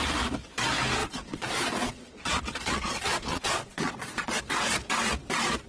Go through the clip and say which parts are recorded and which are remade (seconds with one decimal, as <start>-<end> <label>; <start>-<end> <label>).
0.0-1.0 recorded; 1.0-4.4 remade; 4.4-5.7 recorded